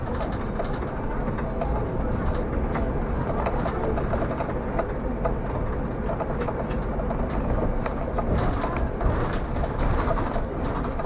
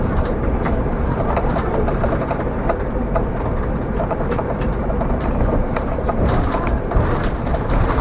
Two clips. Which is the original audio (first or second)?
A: first